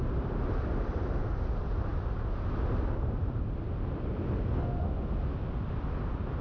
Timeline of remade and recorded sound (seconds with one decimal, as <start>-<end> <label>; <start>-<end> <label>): 0.0-6.4 recorded